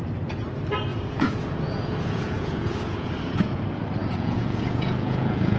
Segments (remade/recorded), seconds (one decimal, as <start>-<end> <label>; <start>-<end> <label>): 0.0-0.9 recorded; 0.9-3.6 remade; 3.6-4.0 recorded; 4.0-5.6 remade